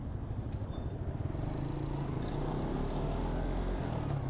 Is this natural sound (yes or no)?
yes